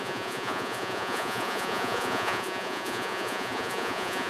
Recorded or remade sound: remade